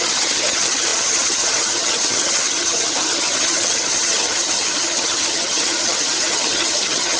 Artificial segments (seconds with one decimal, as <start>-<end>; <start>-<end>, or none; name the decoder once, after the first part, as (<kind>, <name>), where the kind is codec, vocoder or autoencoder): 0.0-7.2 (vocoder, HiFi-GAN)